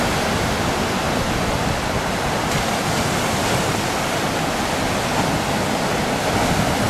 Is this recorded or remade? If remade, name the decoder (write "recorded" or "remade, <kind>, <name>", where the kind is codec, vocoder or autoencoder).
recorded